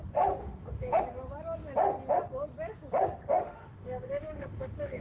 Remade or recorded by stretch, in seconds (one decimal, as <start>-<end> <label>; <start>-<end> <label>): 0.0-0.4 recorded; 0.4-1.0 remade; 1.0-3.4 recorded; 3.4-5.0 remade